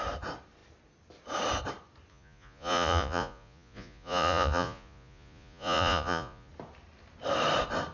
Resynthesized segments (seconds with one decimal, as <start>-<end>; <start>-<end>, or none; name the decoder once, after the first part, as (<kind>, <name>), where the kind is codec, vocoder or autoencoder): 2.1-6.5 (vocoder, Vocos)